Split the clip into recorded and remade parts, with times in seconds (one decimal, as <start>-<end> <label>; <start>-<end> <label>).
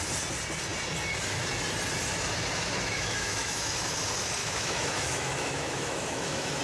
0.0-2.6 recorded; 2.6-3.9 remade; 3.9-4.4 recorded; 4.4-6.6 remade